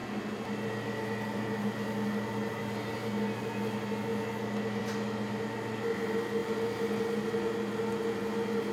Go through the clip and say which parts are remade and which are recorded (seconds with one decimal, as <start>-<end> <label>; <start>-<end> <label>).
0.0-8.7 recorded